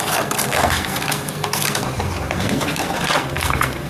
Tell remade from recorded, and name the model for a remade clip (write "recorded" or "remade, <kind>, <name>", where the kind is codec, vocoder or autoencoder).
remade, codec, SNAC